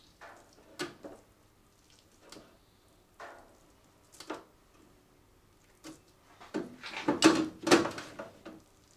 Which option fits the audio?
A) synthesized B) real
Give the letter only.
B